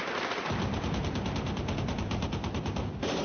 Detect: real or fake real